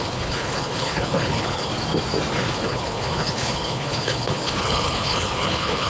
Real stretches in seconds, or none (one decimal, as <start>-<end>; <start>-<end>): 1.7-2.3